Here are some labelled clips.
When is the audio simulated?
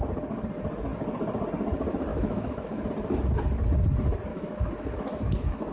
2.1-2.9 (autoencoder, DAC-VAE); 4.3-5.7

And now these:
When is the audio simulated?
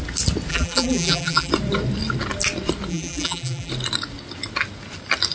0.5-1.5 (vocoder, BigVGAN v2); 2.9-3.7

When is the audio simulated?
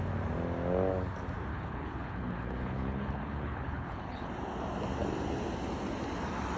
1.5-4.3 (codec, HILCodec)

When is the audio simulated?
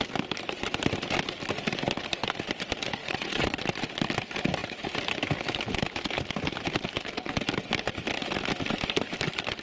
3.0-3.6 (vocoder, Vocos)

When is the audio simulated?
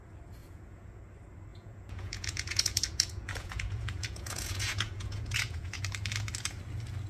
0.4-1.0 (vocoder, Vocos); 1.5-5.8